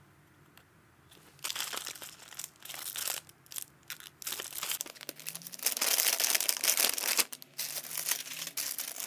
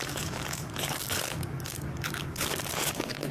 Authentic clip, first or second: first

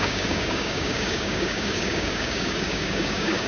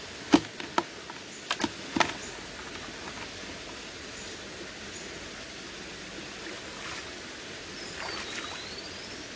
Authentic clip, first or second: second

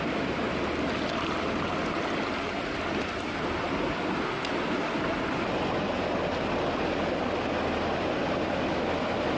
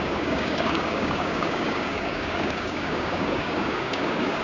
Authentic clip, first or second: first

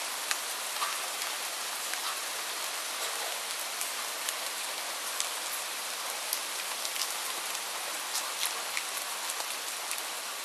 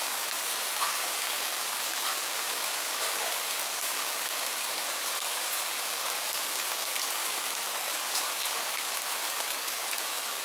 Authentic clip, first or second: first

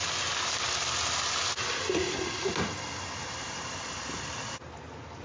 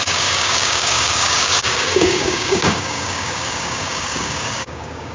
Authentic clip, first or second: first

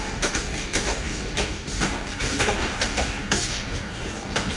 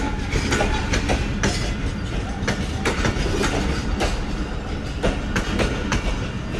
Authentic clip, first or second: second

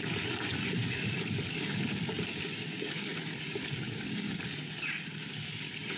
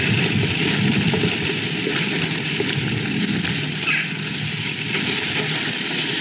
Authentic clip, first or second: second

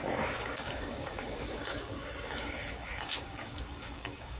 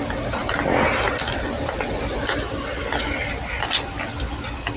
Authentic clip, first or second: second